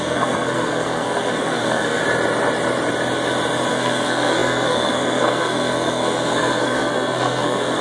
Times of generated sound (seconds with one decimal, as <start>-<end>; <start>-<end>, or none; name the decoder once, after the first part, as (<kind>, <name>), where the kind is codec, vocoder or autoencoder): 0.0-2.0 (codec, SNAC); 3.7-7.8